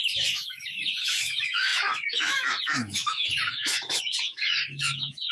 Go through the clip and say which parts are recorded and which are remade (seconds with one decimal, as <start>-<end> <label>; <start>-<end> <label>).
0.0-5.3 remade